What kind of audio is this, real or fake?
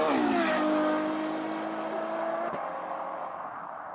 real